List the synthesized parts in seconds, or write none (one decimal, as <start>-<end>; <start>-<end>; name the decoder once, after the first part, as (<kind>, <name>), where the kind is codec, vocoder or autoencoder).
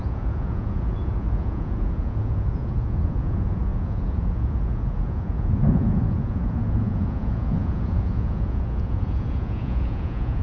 0.0-10.4 (vocoder, Vocos)